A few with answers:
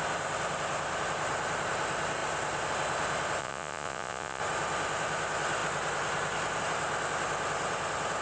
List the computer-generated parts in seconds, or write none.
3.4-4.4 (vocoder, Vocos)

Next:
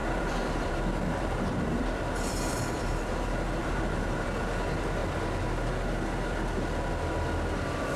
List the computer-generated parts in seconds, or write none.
0.0-3.1 (vocoder, BigVGAN v2); 3.6-4.3

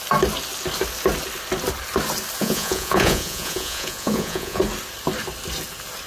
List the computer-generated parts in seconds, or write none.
2.4-4.6 (vocoder, Vocos)

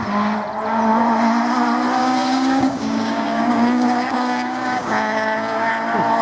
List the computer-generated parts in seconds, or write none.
2.0-5.7 (codec, DAC)